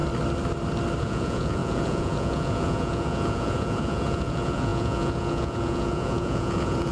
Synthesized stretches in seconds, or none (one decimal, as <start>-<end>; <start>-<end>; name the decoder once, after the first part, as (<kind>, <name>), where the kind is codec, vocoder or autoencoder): 1.0-6.9 (vocoder, Vocos)